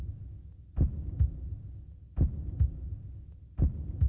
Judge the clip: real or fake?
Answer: real